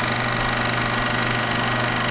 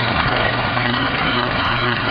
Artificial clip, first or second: second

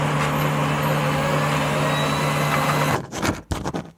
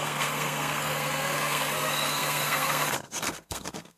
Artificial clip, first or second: second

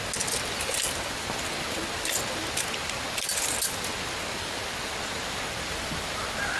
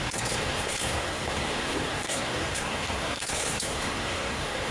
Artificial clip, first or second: second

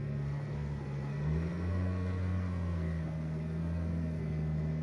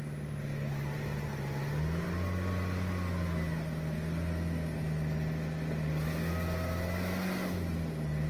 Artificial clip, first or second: first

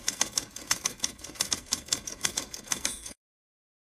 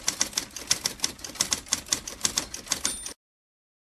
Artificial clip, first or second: first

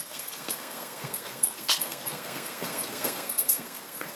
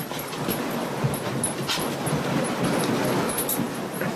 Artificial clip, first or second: first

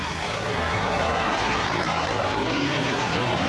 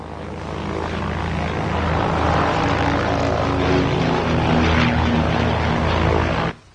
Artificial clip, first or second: first